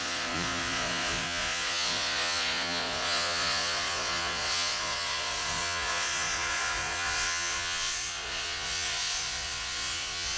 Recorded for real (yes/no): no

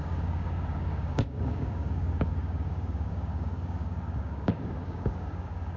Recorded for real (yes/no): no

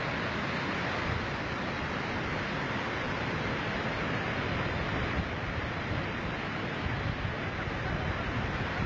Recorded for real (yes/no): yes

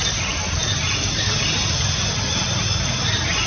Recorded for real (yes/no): yes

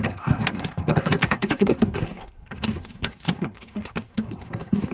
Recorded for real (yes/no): no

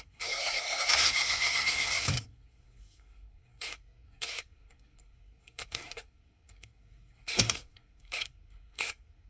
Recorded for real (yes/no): no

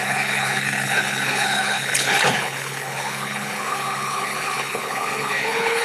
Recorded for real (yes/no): no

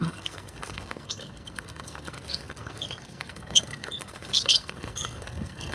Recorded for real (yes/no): no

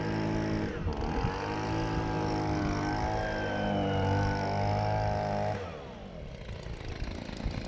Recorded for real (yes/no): yes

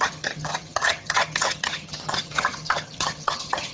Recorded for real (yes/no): no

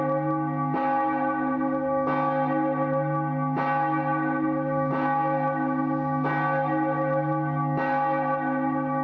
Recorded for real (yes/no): yes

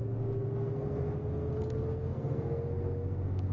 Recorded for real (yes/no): no